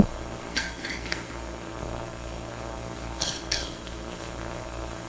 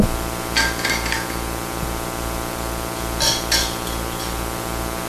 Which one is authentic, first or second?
second